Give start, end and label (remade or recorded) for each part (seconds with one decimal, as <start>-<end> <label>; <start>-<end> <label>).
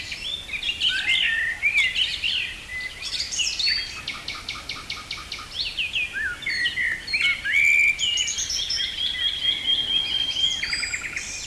0.0-11.5 recorded